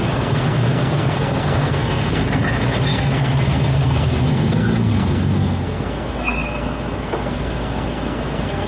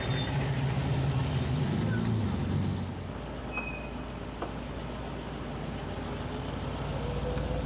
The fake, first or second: first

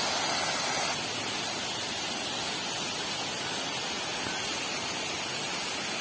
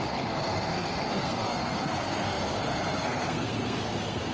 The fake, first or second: second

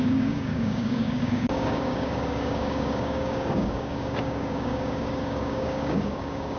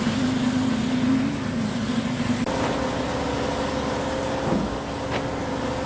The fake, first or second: first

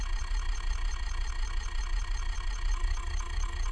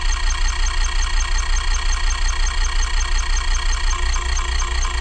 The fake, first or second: first